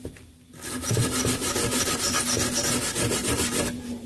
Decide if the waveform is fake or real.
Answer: real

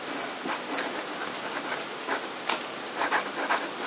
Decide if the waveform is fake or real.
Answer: real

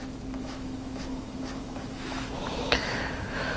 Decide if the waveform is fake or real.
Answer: fake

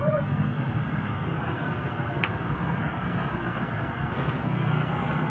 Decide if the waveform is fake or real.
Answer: fake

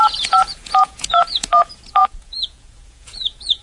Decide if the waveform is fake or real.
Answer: fake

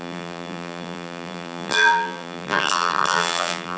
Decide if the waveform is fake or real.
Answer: fake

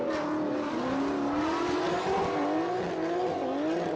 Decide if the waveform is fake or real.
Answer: real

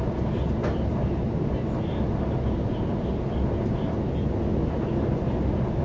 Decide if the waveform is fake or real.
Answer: real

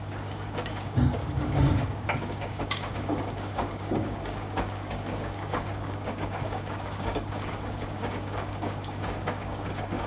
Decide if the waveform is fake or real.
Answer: fake